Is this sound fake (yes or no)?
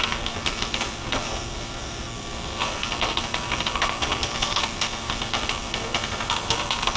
yes